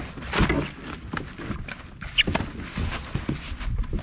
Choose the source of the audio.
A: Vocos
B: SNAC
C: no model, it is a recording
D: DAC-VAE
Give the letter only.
C